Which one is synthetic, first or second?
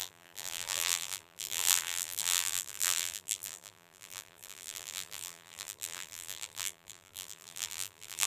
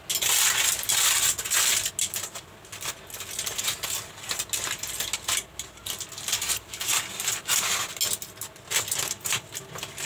first